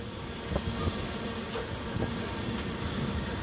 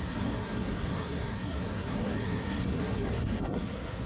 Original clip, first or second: first